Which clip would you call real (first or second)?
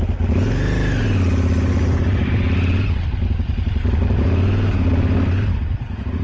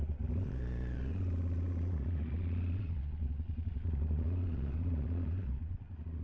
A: first